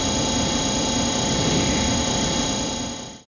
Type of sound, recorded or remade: recorded